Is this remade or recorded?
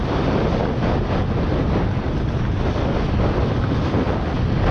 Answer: recorded